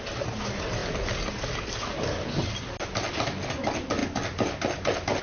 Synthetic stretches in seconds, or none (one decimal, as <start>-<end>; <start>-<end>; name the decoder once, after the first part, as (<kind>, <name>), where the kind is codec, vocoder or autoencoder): none